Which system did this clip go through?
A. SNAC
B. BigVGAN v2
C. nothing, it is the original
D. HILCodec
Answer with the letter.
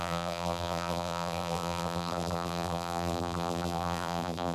B